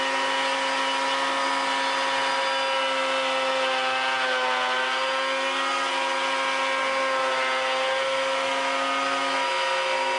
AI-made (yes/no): no